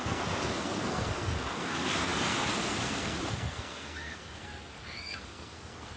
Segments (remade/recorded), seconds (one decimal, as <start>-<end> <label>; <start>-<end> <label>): 0.0-6.0 remade